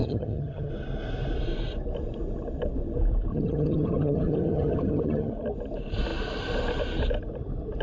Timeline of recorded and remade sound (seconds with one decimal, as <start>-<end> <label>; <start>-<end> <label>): 0.0-0.7 remade; 0.7-3.3 recorded; 3.3-5.3 remade; 5.3-7.8 recorded